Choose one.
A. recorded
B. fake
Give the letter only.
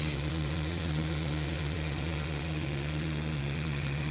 B